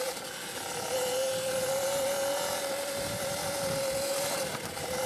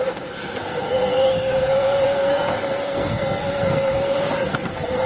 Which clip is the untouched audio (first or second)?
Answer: first